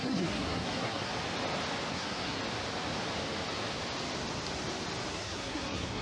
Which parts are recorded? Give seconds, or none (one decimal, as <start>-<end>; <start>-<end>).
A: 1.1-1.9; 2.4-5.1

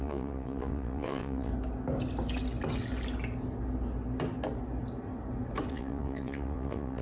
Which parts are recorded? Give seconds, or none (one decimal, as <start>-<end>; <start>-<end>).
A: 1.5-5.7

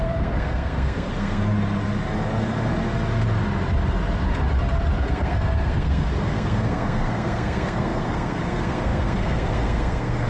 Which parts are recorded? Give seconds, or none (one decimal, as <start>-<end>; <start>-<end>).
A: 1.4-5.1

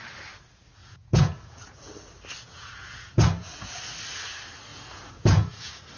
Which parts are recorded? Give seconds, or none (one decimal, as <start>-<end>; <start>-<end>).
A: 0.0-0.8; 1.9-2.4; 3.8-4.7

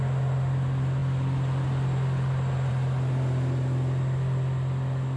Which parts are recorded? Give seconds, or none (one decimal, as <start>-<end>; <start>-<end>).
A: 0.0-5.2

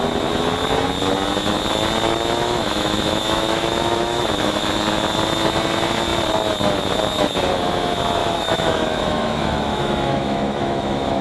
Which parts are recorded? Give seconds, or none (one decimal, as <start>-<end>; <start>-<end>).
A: 0.0-2.4; 4.7-8.2

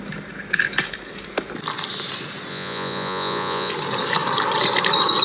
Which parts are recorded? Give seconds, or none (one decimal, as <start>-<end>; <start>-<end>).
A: 0.0-2.5; 3.7-5.2